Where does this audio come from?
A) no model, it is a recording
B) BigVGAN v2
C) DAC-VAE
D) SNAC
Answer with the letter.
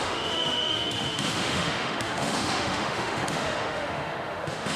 C